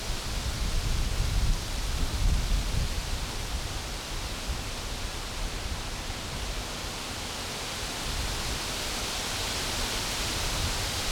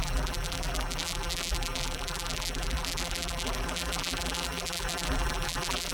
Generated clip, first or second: second